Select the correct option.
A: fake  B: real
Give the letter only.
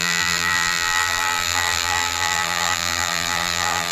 A